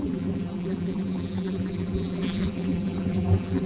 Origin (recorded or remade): remade